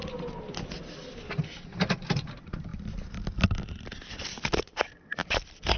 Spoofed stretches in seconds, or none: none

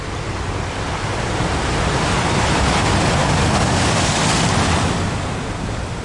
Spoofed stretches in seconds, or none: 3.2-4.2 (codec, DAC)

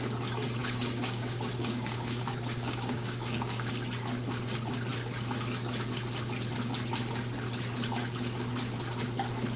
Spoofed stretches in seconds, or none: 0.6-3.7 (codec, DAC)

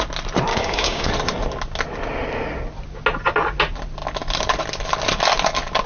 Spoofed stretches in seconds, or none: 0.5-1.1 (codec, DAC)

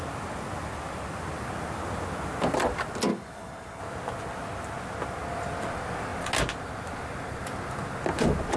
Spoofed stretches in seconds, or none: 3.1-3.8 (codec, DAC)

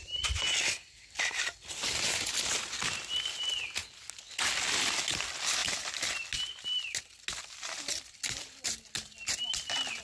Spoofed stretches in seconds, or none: none

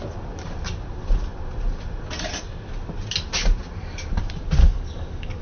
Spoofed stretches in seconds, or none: 4.6-5.4 (codec, DAC)

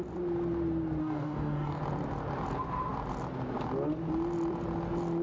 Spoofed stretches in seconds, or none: 1.0-1.8 (codec, DAC)